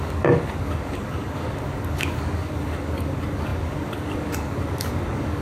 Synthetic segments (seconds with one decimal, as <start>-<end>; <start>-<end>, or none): 0.0-5.4